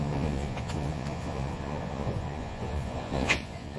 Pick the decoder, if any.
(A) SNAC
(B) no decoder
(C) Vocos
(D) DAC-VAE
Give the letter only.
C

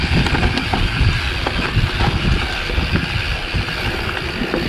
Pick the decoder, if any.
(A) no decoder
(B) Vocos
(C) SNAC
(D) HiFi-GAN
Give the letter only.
A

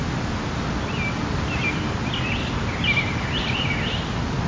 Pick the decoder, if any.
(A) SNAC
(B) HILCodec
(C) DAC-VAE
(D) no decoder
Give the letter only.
D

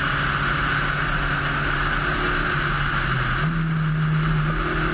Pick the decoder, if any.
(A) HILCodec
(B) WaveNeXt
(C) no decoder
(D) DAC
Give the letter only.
C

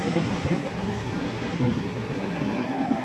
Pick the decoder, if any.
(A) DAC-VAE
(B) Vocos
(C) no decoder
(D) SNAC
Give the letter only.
D